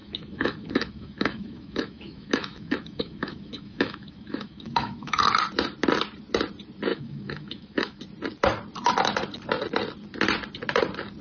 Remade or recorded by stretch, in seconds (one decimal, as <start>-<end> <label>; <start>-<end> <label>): 0.0-5.2 remade; 5.2-6.9 recorded; 6.9-8.0 remade; 8.0-11.2 recorded